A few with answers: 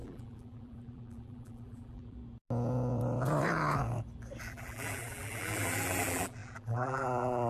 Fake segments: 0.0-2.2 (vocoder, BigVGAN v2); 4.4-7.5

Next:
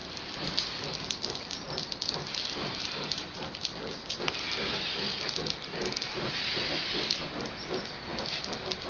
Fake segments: 0.0-4.2 (vocoder, BigVGAN v2)

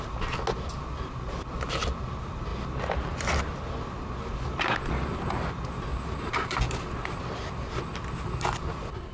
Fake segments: 4.3-5.0 (vocoder, BigVGAN v2); 5.9-7.1

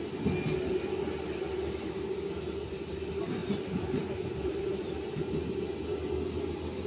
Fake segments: 3.4-5.3 (vocoder, BigVGAN v2)

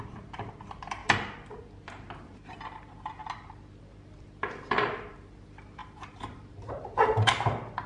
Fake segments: 0.0-1.0 (vocoder, BigVGAN v2); 2.2-3.2; 3.8-7.9

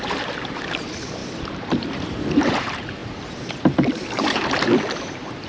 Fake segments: 0.0-5.5 (vocoder, BigVGAN v2)

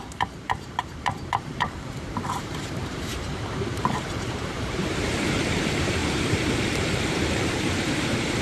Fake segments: 0.0-3.3 (vocoder, BigVGAN v2); 3.8-8.4